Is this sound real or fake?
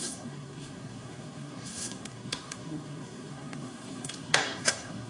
fake